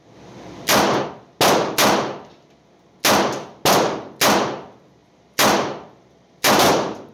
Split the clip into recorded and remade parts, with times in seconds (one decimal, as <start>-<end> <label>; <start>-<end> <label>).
0.0-5.0 recorded; 5.0-7.1 remade